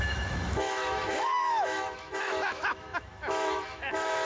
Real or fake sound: fake